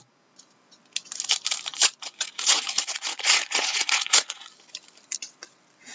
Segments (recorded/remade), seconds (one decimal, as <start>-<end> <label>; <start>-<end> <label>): 0.0-1.7 recorded; 1.7-4.5 remade; 4.5-5.9 recorded